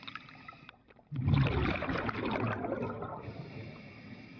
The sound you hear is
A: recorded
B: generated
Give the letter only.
A